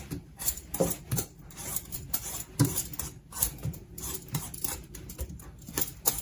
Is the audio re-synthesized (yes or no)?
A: yes